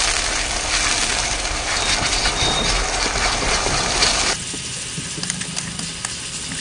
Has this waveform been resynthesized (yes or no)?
no